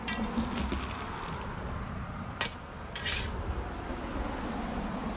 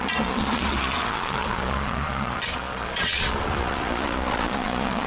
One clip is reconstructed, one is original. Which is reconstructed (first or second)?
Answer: second